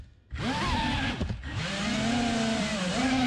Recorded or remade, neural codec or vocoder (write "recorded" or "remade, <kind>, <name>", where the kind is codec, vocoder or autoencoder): recorded